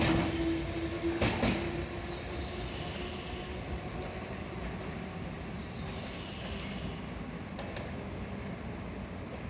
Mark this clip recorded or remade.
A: recorded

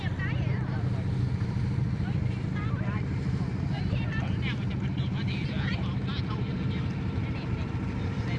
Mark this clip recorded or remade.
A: remade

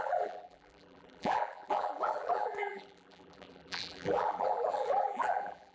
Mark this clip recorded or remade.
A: remade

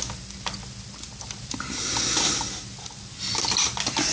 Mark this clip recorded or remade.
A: recorded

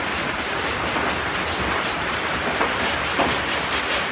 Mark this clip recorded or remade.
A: recorded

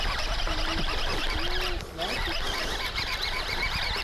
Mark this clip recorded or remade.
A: recorded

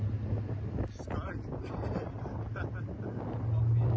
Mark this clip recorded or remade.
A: recorded